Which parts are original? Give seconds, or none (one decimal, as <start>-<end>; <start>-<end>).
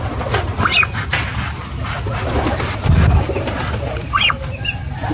0.0-5.1